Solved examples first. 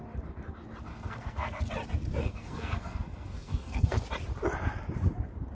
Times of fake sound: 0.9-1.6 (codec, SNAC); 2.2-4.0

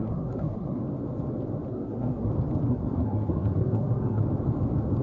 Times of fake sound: 0.0-0.8 (codec, SNAC); 1.7-2.3; 2.7-4.2